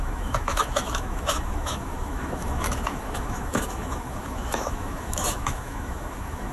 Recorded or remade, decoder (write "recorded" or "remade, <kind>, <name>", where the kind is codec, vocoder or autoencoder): remade, autoencoder, DAC-VAE